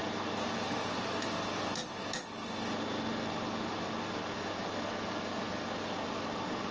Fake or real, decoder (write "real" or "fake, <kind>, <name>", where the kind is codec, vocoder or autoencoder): real